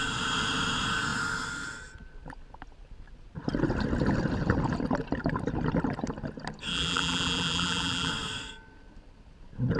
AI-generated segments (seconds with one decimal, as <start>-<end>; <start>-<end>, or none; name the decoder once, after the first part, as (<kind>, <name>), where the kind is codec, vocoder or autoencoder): 6.7-8.1 (vocoder, BigVGAN v2)